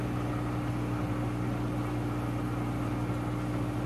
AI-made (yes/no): no